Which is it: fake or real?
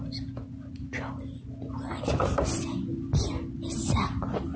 real